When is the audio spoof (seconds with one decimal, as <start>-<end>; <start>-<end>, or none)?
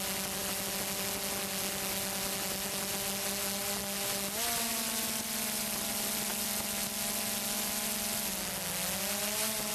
none